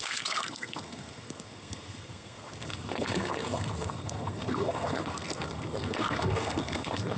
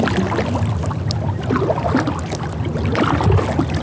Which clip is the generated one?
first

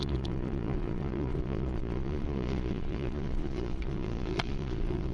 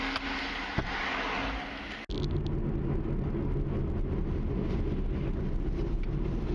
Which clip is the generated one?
first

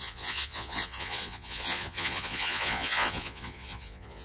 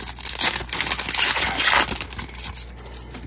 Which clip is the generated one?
first